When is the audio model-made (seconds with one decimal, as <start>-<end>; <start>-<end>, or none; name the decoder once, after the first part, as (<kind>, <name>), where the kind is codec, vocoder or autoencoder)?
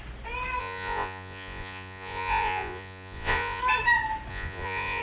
0.6-3.6 (vocoder, Vocos); 4.3-5.0